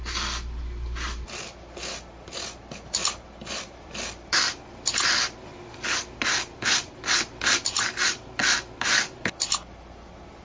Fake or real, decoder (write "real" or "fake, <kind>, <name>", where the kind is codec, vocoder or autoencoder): fake, vocoder, BigVGAN v2